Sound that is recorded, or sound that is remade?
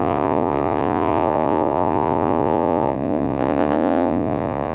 remade